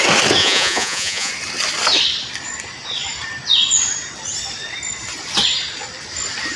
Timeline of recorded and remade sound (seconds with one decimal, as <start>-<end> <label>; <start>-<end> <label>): 0.0-0.4 recorded; 0.4-1.3 remade; 1.3-6.6 recorded